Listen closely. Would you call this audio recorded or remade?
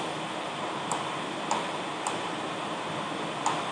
recorded